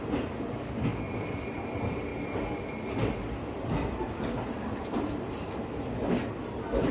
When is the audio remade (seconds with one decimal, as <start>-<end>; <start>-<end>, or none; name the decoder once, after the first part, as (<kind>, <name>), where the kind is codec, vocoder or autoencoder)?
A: 3.0-5.6 (vocoder, BigVGAN v2)